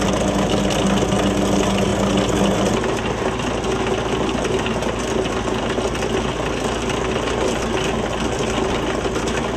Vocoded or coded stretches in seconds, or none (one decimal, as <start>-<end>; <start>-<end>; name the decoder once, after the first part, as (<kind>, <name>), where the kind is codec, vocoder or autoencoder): none